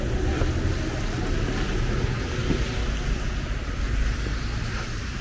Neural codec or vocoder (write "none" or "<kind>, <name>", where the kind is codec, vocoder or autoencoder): none